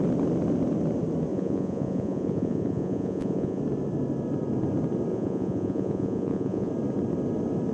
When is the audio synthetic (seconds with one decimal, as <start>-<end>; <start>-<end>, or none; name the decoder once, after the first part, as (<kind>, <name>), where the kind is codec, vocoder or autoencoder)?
1.3-3.6 (vocoder, Vocos); 5.1-6.7